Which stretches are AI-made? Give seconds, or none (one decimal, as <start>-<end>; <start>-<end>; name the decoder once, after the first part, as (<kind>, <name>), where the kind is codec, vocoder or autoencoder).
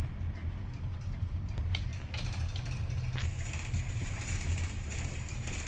0.0-0.4 (vocoder, BigVGAN v2); 1.2-1.9; 2.7-5.7